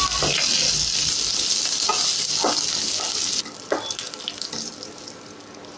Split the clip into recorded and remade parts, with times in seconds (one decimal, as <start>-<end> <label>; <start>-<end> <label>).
0.0-5.8 recorded

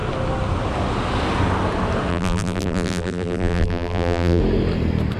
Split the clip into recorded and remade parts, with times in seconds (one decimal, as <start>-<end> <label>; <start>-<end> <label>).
0.0-2.1 recorded; 2.1-4.4 remade; 4.4-5.2 recorded

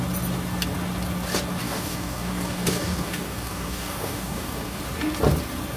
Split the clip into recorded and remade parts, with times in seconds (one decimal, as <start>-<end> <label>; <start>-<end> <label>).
0.0-1.6 recorded; 1.6-4.8 remade; 4.8-5.8 recorded

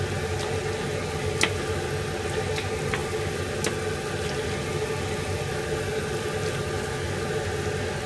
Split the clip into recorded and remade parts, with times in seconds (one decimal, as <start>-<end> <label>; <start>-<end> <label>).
0.0-8.1 recorded

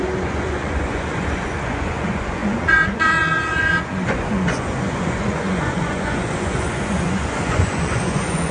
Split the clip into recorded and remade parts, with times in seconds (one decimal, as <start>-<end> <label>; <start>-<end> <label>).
0.0-8.5 remade